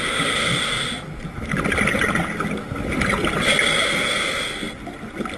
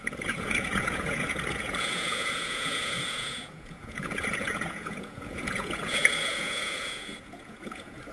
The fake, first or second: second